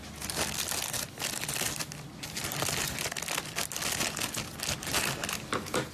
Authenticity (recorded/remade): recorded